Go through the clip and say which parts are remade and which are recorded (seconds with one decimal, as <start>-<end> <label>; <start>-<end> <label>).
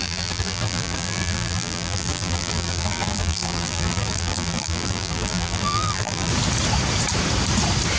0.0-6.3 remade; 6.3-8.0 recorded